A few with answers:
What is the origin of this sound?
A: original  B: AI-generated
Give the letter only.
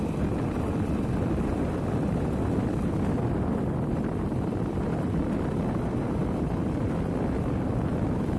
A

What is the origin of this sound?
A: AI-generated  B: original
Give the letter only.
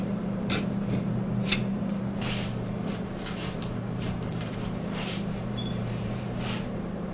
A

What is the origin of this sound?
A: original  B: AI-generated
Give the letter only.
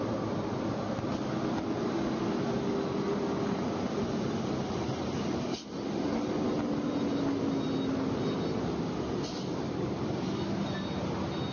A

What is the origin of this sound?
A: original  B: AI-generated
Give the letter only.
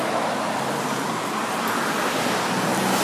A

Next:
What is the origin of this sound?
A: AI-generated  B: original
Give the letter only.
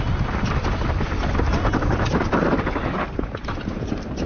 B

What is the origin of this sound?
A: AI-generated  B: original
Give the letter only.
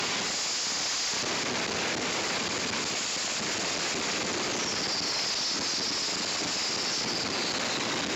B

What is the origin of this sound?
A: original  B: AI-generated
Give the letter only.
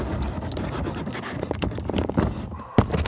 A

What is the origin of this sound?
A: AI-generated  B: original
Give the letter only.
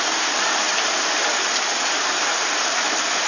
B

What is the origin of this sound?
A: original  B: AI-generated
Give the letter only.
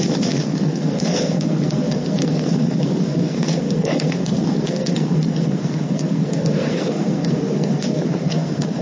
B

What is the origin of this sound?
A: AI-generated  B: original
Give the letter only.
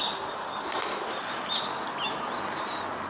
B